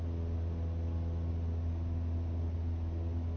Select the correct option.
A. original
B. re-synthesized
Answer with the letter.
A